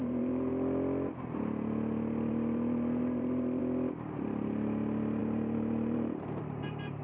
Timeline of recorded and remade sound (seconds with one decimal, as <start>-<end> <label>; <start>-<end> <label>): 0.0-0.5 remade; 0.5-2.3 recorded; 2.3-3.6 remade; 3.6-5.2 recorded; 5.2-7.0 remade

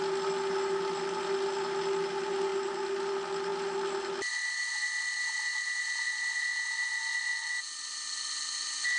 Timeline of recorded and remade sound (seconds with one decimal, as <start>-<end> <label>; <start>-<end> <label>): 0.0-9.0 recorded

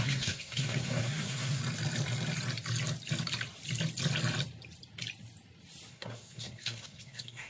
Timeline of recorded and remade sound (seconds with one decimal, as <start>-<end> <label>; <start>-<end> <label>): 0.0-1.6 remade; 1.6-5.9 recorded; 5.9-7.5 remade